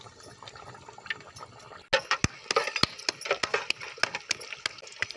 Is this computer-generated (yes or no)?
no